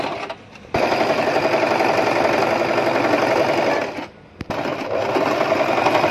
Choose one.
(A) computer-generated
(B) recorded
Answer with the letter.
B